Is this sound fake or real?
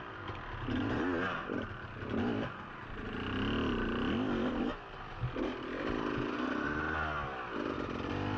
real